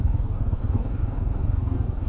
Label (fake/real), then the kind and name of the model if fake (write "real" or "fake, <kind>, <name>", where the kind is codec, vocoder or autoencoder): fake, codec, DAC